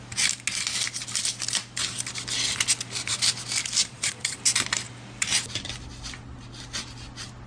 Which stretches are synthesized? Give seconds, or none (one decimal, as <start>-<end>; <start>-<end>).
3.8-4.4